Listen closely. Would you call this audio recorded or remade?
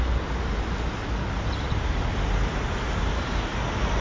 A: recorded